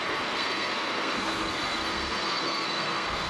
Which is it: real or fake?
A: fake